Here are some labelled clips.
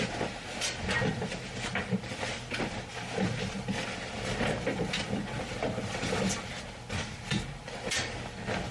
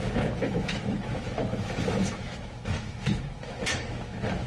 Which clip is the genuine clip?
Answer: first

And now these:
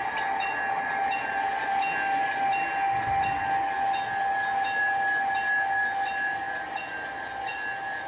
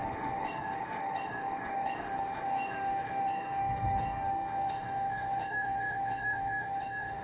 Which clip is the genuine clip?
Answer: first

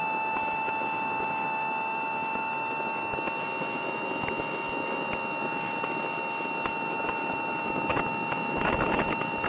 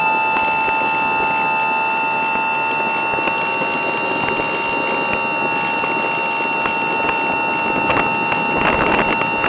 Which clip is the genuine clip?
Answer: second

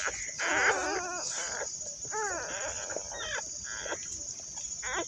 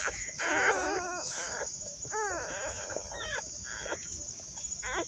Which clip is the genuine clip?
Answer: first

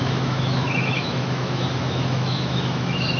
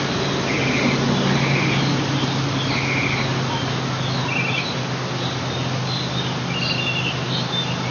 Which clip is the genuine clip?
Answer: second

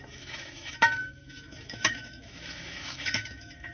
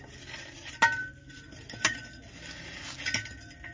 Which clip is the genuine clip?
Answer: second